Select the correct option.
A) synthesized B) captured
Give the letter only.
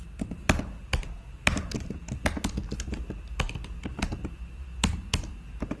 B